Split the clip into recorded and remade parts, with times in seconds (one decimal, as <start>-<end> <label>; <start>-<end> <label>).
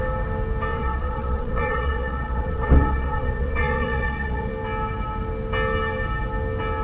0.0-0.7 recorded; 0.7-4.5 remade; 4.5-6.8 recorded